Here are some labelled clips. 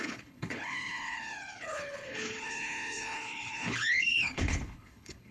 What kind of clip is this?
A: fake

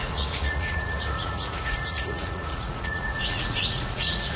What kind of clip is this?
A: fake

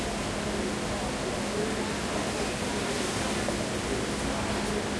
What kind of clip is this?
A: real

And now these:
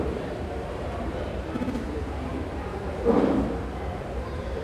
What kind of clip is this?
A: fake